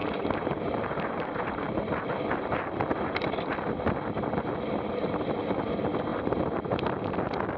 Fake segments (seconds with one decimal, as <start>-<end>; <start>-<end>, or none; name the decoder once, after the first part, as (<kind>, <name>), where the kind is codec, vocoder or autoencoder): 0.0-2.0 (vocoder, BigVGAN v2)